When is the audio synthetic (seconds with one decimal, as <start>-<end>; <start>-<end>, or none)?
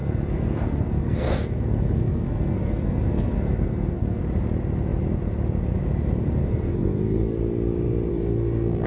0.0-4.2; 6.4-7.4; 8.1-8.9